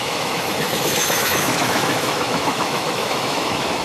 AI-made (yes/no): yes